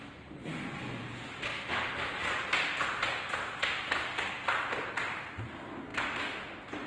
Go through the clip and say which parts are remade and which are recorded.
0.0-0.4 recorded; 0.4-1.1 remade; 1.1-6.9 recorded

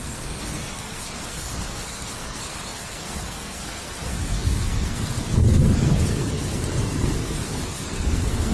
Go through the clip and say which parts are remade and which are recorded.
0.0-8.5 remade